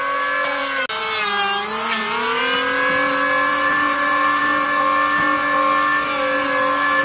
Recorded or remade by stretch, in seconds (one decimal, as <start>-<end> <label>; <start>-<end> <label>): 0.0-3.5 recorded; 3.5-4.4 remade; 4.4-7.0 recorded